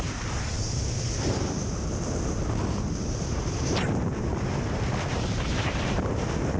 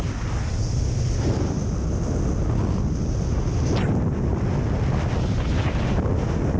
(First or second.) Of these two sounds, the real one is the second